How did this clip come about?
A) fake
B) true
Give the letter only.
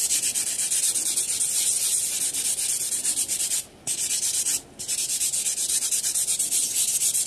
B